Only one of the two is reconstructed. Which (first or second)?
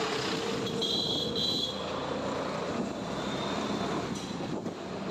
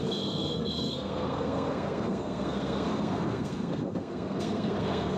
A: second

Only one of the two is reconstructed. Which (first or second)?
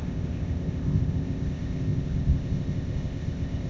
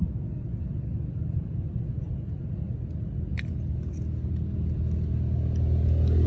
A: first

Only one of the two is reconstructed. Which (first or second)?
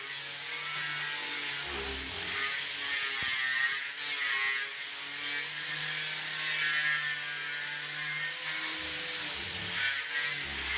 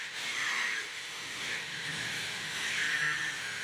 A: second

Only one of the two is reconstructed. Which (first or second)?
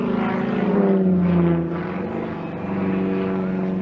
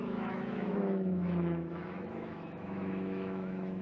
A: second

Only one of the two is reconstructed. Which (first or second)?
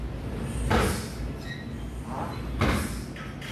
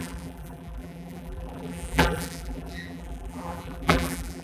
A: second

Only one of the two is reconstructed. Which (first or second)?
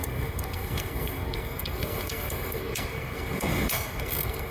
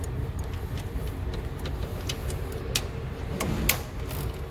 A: first